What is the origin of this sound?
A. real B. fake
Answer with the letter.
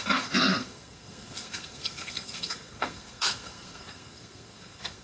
B